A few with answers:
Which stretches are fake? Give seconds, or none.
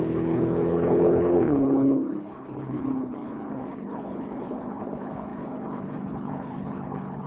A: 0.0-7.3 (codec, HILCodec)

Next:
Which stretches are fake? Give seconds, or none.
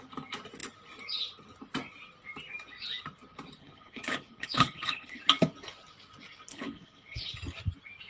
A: 3.6-5.2 (codec, HILCodec); 6.5-7.3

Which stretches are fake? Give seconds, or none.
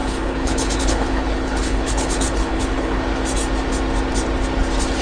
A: 0.0-3.0 (codec, HILCodec)